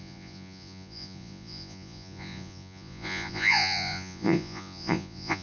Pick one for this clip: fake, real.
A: fake